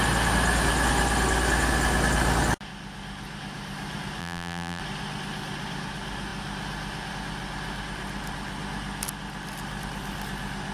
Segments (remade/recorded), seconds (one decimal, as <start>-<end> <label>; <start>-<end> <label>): 0.0-4.2 recorded; 4.2-4.8 remade; 4.8-10.7 recorded